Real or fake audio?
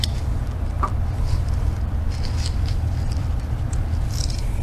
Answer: fake